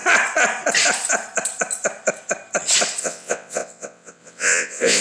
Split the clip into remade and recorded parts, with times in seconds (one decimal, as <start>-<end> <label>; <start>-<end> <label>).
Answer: 0.0-3.0 recorded; 3.0-5.0 remade